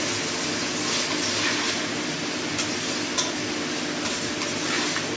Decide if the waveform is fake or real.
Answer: real